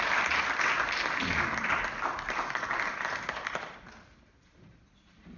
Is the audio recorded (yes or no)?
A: yes